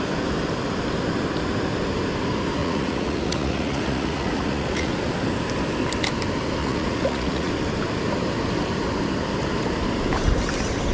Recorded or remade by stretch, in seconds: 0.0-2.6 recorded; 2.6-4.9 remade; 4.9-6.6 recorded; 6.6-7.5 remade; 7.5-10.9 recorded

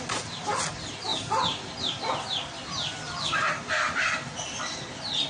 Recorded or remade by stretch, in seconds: 0.0-5.3 recorded

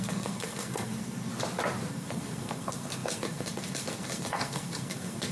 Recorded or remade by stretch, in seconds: 0.0-1.3 remade; 1.3-1.9 recorded; 1.9-5.3 remade

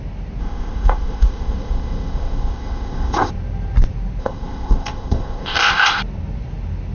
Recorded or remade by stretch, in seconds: 0.0-0.4 recorded; 0.4-3.3 remade; 3.3-4.2 recorded; 4.2-6.0 remade; 6.0-6.9 recorded